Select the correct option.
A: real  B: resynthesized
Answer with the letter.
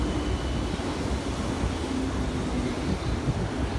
A